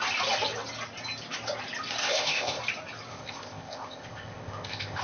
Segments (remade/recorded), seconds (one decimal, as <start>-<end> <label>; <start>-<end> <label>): 0.0-2.0 recorded; 2.0-2.6 remade; 2.6-3.1 recorded; 3.1-5.0 remade